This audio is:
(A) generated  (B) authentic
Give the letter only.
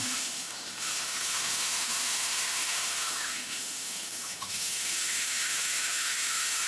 A